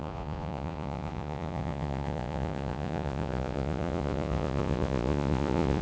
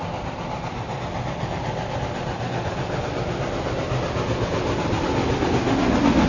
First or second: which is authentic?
second